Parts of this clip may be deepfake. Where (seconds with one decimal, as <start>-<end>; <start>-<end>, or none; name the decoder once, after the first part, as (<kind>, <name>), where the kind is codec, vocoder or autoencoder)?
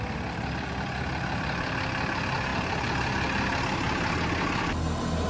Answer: none